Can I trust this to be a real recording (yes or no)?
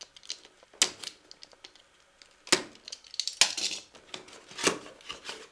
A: yes